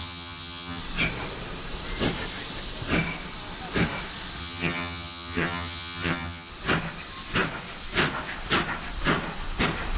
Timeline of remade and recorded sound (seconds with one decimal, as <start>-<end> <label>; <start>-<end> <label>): 0.0-0.8 remade; 0.8-4.4 recorded; 4.4-6.5 remade; 6.5-10.0 recorded